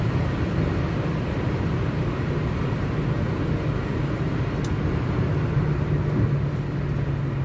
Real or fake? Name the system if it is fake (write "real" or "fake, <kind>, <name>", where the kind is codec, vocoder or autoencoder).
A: real